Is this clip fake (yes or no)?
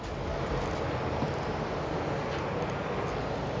no